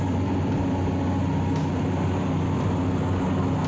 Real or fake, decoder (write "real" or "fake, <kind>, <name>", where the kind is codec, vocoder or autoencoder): real